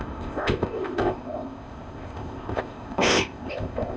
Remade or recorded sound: remade